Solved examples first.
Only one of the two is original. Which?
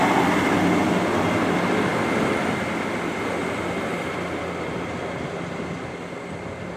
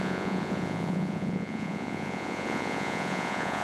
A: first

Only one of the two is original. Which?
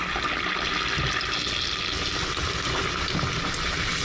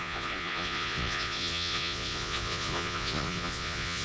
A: first